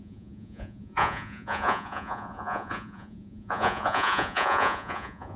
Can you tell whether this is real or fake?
fake